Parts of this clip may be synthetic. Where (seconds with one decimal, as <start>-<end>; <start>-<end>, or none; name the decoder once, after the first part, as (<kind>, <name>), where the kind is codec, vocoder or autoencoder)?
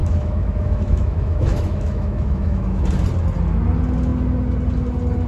0.0-2.8 (autoencoder, DAC-VAE)